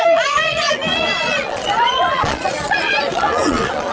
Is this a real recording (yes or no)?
no